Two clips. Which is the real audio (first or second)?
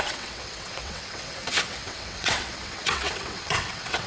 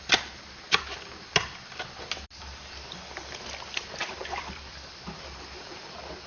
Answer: second